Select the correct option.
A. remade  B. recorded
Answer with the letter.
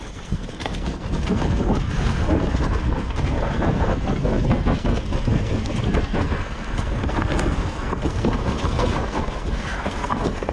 A